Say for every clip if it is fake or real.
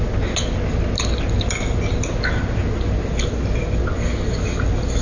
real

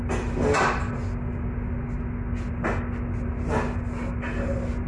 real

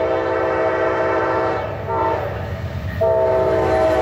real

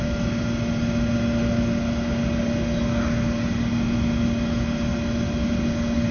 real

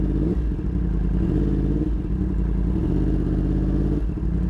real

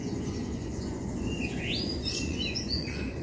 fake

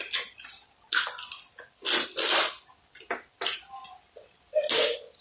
real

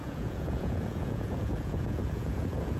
fake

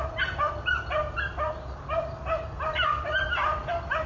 real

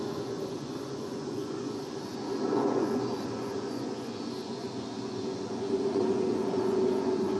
fake